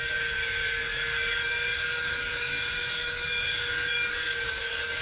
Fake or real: fake